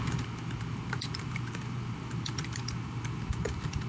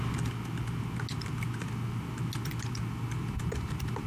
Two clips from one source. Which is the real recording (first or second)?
second